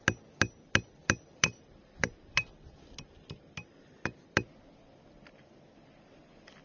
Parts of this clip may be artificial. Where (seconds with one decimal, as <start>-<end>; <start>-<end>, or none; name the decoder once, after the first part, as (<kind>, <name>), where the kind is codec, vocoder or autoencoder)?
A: 1.0-4.2 (vocoder, BigVGAN v2)